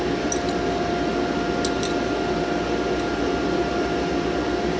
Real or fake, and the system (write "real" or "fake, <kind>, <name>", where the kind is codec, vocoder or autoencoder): real